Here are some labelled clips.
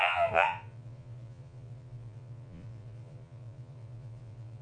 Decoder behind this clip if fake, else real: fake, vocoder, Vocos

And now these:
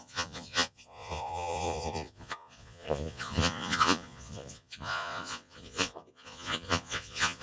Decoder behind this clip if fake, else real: fake, vocoder, Vocos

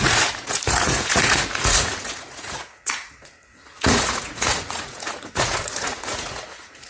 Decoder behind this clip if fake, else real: fake, vocoder, Vocos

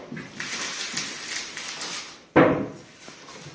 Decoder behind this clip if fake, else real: real